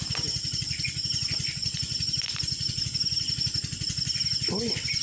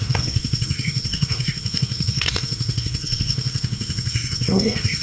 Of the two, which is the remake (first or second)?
second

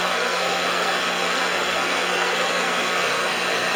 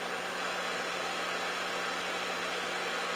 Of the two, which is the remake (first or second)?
first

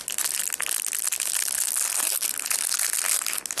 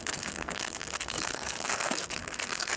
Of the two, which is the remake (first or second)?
second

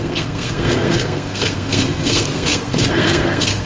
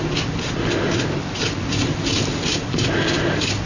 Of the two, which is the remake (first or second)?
first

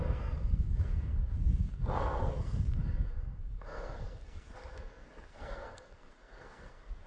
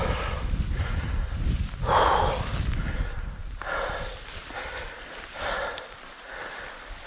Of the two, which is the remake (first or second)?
first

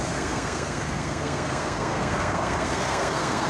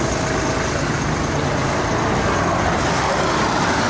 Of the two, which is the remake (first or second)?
first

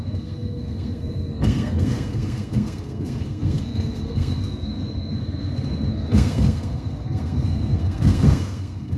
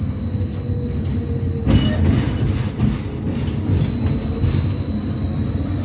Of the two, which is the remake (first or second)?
first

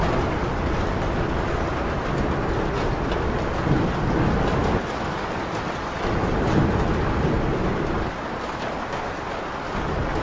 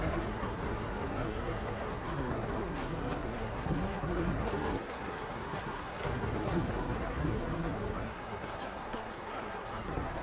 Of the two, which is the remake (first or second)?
second